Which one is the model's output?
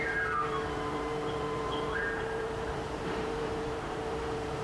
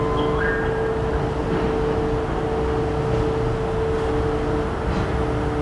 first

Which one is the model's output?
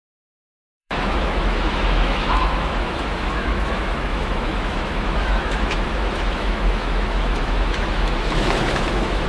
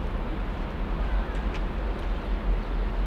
first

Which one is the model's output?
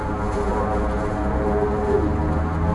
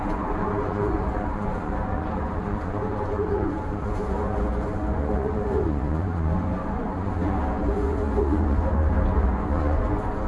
second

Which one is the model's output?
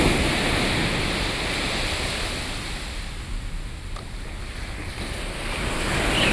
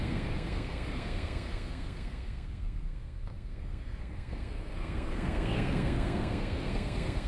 second